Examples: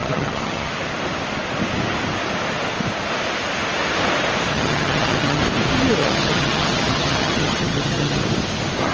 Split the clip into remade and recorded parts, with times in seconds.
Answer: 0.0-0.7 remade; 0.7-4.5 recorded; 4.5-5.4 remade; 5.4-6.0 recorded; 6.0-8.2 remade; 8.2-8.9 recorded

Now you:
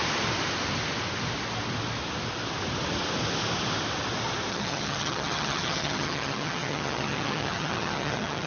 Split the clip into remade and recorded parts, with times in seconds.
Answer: 0.0-4.5 recorded; 4.5-8.5 remade

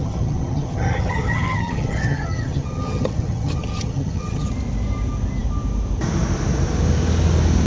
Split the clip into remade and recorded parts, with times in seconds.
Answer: 0.0-4.5 remade; 4.5-7.7 recorded

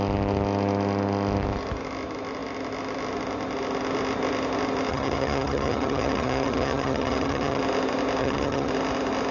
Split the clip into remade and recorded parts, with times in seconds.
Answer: 0.0-4.9 recorded; 4.9-7.6 remade; 7.6-8.2 recorded; 8.2-8.7 remade; 8.7-9.3 recorded

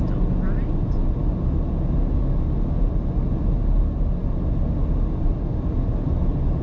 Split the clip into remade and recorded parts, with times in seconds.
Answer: 0.0-6.6 recorded

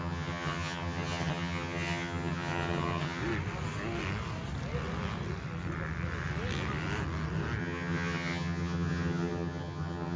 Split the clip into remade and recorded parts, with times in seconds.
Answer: 0.0-3.2 remade; 3.2-7.6 recorded; 7.6-10.2 remade

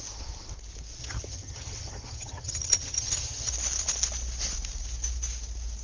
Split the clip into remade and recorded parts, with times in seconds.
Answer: 0.0-1.0 recorded; 1.0-3.5 remade; 3.5-5.8 recorded

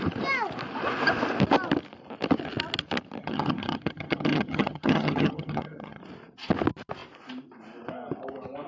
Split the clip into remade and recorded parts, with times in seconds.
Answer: 0.0-3.2 recorded; 3.2-6.0 remade; 6.0-8.7 recorded